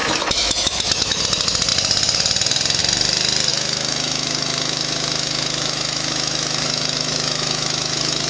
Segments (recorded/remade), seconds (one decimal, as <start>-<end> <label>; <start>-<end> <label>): 0.0-1.2 remade; 1.2-3.5 recorded; 3.5-8.3 remade